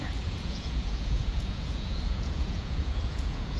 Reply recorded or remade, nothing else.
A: remade